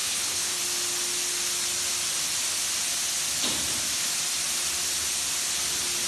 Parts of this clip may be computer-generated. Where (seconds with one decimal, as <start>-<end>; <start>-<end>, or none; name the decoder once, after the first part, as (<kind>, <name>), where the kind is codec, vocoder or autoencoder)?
0.0-0.6 (codec, HILCodec)